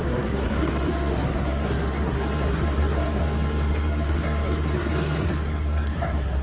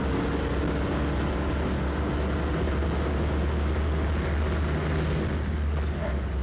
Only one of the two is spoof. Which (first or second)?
first